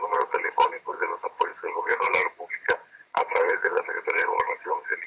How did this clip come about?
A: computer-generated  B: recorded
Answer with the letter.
A